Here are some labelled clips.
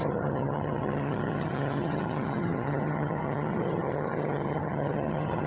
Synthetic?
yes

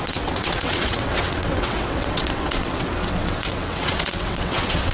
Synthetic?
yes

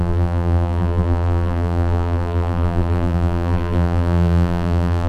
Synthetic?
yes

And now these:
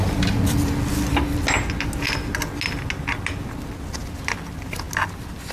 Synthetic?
no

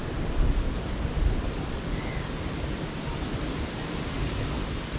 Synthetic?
no